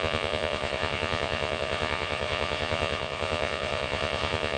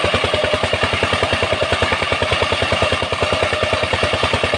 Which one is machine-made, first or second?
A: first